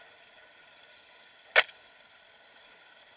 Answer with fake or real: real